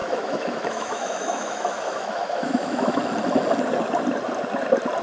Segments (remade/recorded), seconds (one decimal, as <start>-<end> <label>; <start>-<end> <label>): 0.0-3.0 remade; 3.0-5.0 recorded